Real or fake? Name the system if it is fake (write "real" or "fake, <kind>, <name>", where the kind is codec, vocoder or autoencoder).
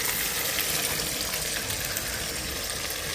real